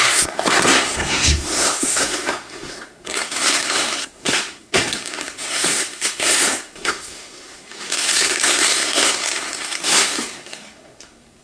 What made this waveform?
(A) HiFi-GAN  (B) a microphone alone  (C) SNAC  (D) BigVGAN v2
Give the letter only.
C